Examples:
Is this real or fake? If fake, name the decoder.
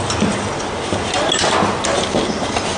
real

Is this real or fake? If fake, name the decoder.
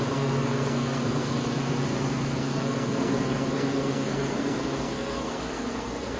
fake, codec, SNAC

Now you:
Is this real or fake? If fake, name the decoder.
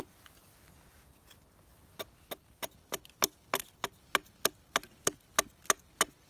real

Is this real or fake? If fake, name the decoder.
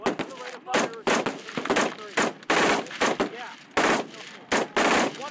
real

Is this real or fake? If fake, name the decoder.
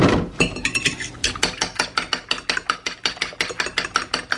real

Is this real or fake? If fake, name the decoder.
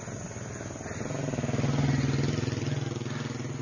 real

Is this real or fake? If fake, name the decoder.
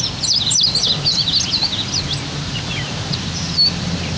real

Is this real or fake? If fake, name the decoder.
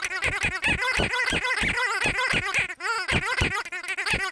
real